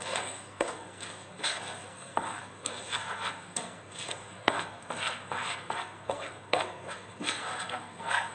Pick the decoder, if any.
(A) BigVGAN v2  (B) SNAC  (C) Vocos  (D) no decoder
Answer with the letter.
B